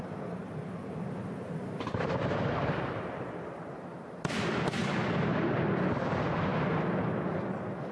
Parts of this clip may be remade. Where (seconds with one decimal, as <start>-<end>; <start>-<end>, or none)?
0.0-6.5